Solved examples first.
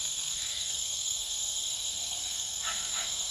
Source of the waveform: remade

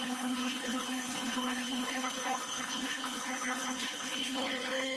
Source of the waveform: remade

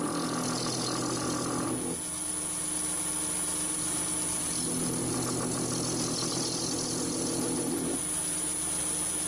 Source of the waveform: recorded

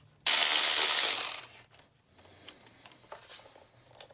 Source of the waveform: recorded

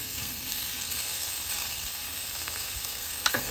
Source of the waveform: remade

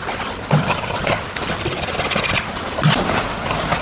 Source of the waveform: recorded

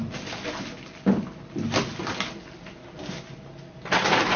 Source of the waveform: recorded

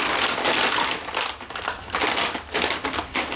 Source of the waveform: recorded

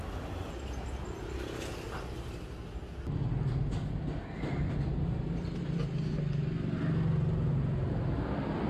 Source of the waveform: recorded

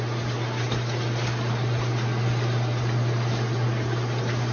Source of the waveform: recorded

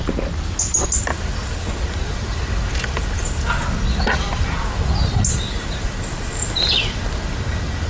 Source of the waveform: recorded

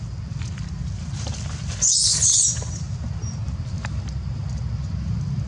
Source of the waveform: recorded